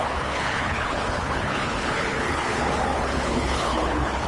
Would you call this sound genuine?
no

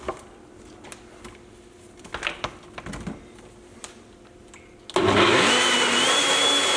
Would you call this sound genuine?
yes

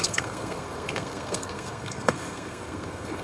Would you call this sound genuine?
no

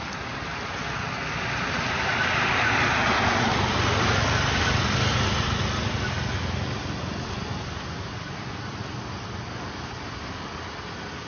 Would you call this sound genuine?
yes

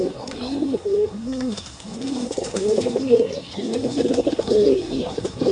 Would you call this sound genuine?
no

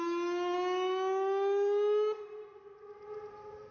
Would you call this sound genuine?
yes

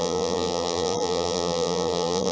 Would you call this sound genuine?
no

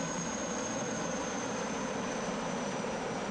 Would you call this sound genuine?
no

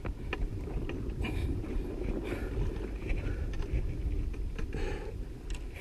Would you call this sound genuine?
yes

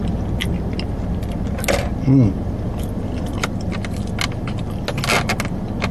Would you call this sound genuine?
yes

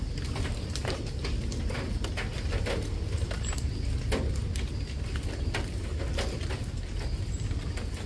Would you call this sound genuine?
yes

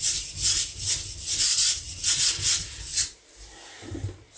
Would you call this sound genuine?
yes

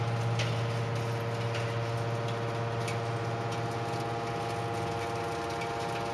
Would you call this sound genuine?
yes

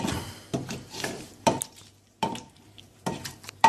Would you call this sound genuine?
no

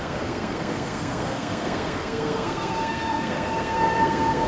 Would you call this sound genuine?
no